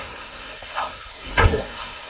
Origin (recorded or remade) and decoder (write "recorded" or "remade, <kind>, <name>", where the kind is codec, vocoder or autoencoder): remade, codec, SNAC